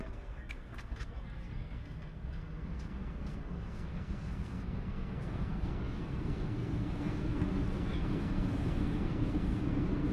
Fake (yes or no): yes